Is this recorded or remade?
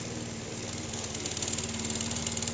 recorded